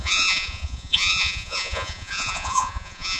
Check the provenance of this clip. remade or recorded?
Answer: remade